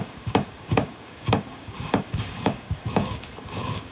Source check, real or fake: fake